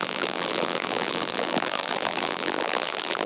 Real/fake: fake